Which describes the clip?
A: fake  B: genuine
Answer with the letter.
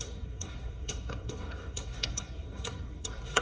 A